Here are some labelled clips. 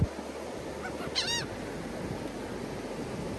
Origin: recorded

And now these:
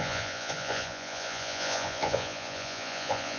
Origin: remade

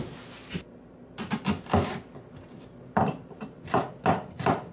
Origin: recorded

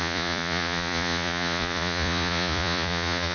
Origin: remade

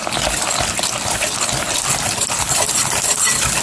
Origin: recorded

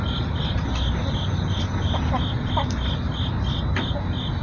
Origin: recorded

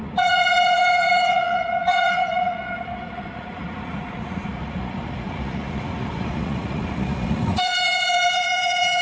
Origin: remade